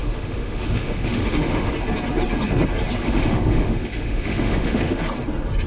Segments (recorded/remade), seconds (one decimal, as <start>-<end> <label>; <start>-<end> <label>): 0.0-1.7 remade; 1.7-3.0 recorded; 3.0-5.0 remade; 5.0-5.7 recorded